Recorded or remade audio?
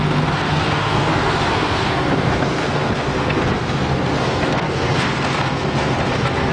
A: remade